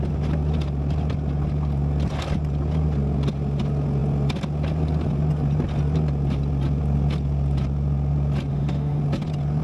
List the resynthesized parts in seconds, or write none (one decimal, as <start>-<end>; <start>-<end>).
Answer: 8.5-9.0